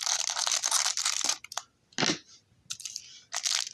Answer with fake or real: real